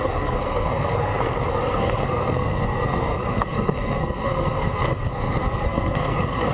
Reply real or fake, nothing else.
fake